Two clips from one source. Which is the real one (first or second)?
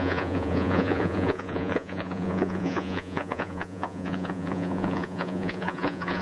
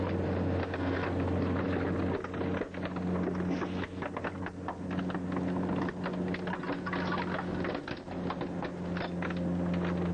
second